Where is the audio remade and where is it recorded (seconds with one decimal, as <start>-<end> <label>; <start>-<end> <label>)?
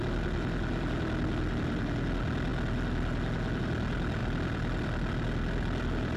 0.0-6.2 recorded